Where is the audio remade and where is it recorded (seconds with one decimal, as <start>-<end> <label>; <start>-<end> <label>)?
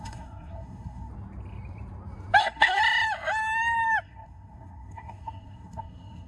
0.0-1.1 remade; 1.1-2.4 recorded; 2.4-2.8 remade; 2.8-4.0 recorded; 4.0-6.3 remade